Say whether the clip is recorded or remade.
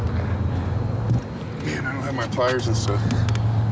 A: recorded